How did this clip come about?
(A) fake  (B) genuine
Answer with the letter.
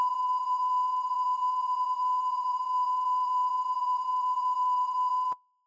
A